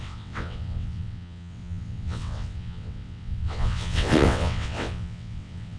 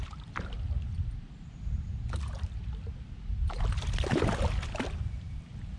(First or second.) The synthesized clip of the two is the first